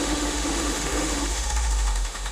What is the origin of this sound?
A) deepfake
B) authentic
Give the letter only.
A